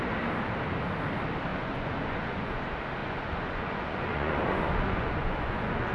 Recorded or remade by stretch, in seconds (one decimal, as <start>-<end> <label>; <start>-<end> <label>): 0.0-1.5 recorded; 1.5-2.6 remade; 2.6-3.0 recorded; 3.0-5.9 remade